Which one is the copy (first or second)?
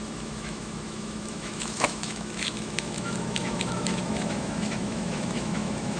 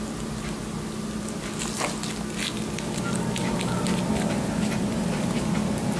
first